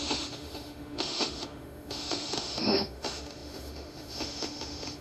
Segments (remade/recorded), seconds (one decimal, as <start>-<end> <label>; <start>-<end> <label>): 0.0-5.0 remade

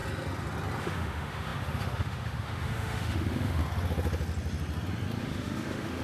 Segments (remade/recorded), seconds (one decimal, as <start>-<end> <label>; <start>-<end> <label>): 0.0-0.8 recorded; 0.8-3.6 remade; 3.6-5.2 recorded; 5.2-6.0 remade

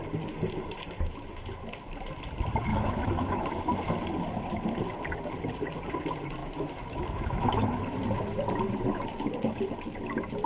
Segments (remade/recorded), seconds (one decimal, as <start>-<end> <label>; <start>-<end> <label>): 0.0-2.7 recorded; 2.7-3.6 remade; 3.6-6.4 recorded; 6.4-7.8 remade; 7.8-10.5 recorded

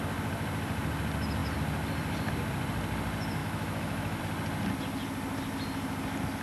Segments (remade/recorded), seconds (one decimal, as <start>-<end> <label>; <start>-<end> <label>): 0.0-3.4 recorded; 3.4-4.2 remade; 4.2-6.4 recorded

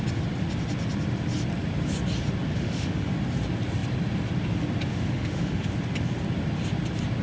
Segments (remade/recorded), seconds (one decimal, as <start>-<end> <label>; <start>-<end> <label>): 0.0-2.5 recorded; 2.5-3.1 remade; 3.1-4.9 recorded; 4.9-5.7 remade; 5.7-7.2 recorded

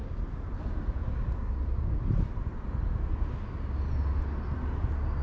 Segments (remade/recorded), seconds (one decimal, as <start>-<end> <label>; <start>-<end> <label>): 0.0-5.2 recorded